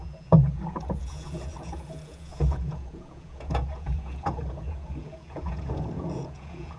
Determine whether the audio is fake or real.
fake